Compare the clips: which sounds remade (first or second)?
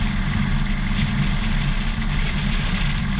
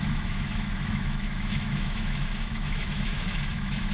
second